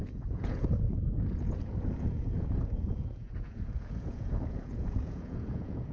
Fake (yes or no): yes